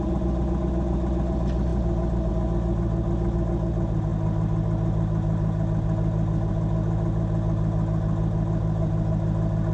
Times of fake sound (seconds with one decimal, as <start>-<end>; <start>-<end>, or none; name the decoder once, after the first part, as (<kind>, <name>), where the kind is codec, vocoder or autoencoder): none

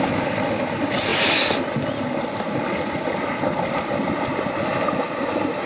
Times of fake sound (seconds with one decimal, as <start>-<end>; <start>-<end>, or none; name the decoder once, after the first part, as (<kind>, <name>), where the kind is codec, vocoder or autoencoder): none

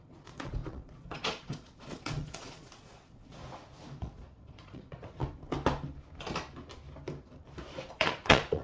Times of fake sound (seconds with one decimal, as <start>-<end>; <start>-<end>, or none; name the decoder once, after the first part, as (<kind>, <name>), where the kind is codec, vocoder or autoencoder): 0.0-3.4 (vocoder, Vocos); 4.0-5.2; 7.9-8.6